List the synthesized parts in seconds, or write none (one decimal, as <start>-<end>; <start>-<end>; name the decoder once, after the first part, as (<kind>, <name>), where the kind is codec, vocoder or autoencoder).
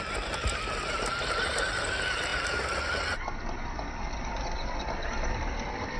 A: 0.0-2.3 (vocoder, BigVGAN v2)